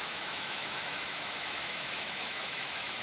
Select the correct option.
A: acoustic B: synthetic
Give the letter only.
B